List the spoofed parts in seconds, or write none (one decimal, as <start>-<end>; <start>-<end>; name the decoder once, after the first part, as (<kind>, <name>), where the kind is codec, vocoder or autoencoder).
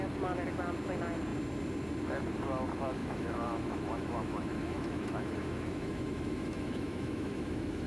3.0-7.9 (autoencoder, DAC-VAE)